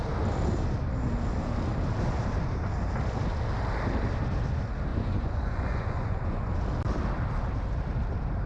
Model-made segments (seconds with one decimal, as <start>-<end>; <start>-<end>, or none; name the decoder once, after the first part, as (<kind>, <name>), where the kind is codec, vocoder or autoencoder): 4.9-6.5 (vocoder, Vocos)